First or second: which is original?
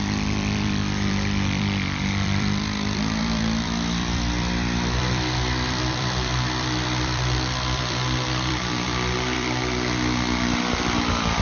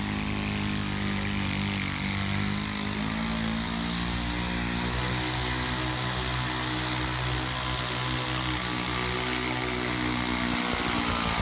second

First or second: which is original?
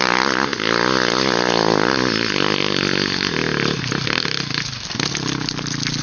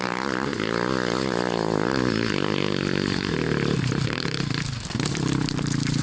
first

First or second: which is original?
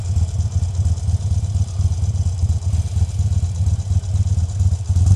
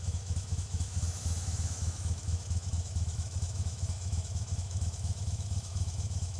first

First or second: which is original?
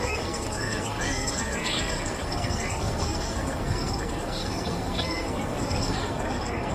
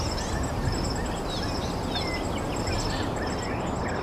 second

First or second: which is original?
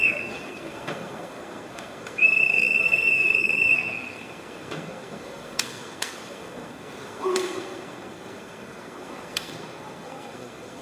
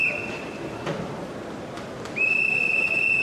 second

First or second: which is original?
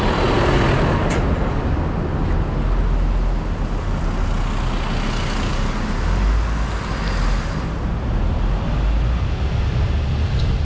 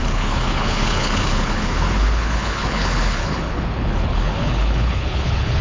first